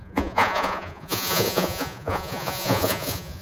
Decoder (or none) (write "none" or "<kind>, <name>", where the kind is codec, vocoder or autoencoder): vocoder, Vocos